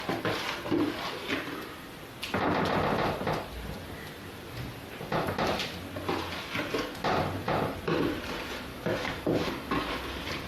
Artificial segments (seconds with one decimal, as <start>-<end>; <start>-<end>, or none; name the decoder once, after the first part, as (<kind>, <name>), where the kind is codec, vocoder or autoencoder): 8.7-9.9 (codec, DAC)